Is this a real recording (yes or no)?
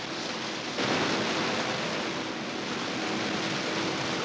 yes